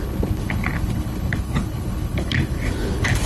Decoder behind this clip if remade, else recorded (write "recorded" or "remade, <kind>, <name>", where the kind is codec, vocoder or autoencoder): remade, codec, HILCodec